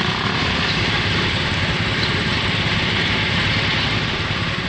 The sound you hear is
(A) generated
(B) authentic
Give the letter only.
A